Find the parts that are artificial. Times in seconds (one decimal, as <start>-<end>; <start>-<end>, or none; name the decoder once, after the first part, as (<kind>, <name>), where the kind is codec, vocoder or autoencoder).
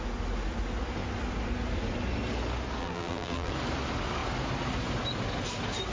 2.8-3.5 (vocoder, BigVGAN v2)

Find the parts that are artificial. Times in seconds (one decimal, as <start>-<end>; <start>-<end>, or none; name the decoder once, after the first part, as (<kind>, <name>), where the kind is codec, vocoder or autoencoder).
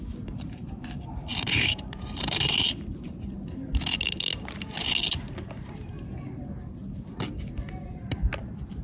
1.3-3.4 (vocoder, BigVGAN v2)